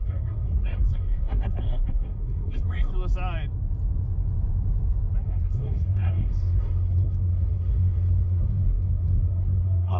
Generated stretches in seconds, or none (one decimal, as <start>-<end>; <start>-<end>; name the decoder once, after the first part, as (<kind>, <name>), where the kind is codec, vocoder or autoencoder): 0.0-2.9 (codec, SNAC); 5.2-10.0